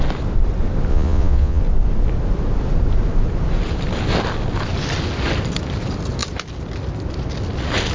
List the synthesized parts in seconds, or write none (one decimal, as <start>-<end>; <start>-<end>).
0.9-1.6